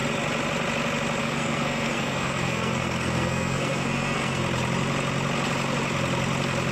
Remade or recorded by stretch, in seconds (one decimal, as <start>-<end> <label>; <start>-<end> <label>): 0.0-1.2 recorded; 1.2-4.4 remade; 4.4-6.7 recorded